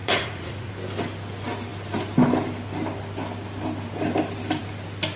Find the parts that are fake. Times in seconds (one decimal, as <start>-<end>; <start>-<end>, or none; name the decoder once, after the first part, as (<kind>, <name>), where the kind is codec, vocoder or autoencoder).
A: 0.0-0.7 (vocoder, Vocos)